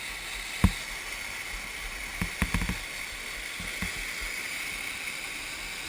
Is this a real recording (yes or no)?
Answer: yes